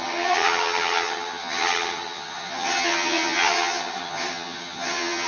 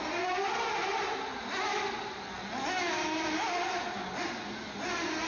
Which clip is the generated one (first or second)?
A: first